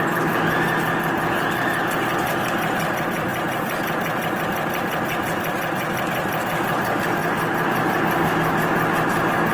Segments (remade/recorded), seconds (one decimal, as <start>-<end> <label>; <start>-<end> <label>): 0.0-9.5 recorded